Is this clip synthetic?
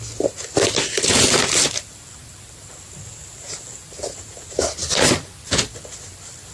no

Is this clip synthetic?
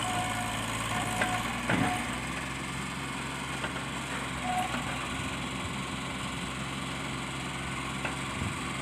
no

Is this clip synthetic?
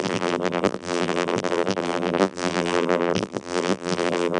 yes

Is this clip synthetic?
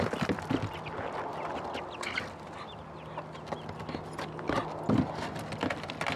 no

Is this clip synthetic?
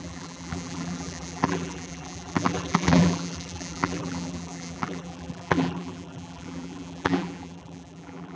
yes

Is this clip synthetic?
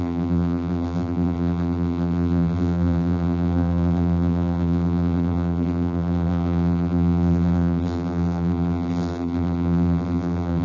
yes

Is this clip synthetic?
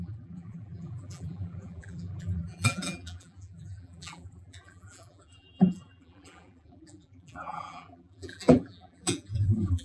yes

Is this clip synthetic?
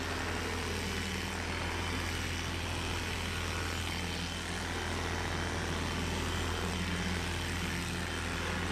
no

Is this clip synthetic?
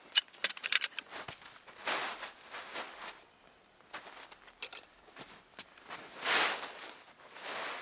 no